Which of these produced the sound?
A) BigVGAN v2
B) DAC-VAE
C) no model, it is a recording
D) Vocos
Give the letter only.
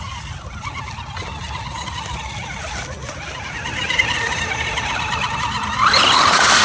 C